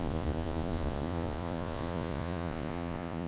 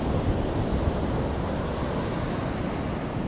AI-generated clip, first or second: first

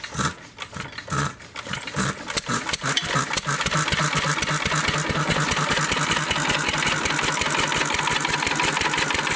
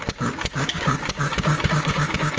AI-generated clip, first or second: second